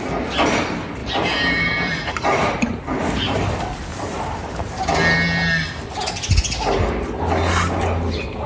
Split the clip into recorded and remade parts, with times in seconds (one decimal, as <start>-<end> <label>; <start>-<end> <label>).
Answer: 0.0-1.0 recorded; 1.0-3.0 remade; 3.0-3.9 recorded; 3.9-4.5 remade; 4.5-8.5 recorded